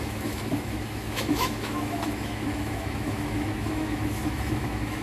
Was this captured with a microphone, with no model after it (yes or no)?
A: no